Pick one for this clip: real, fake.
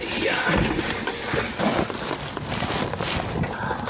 real